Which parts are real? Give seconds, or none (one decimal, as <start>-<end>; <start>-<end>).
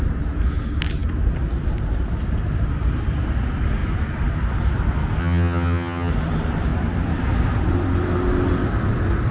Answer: 0.0-5.2; 6.1-9.3